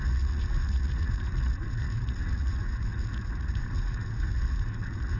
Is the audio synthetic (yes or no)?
yes